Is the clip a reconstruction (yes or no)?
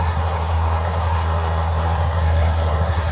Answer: yes